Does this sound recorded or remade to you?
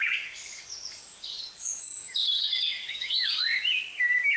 remade